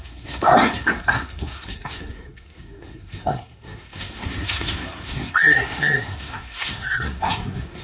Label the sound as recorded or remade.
remade